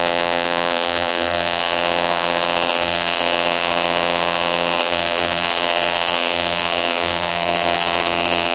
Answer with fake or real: fake